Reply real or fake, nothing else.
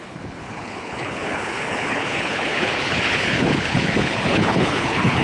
fake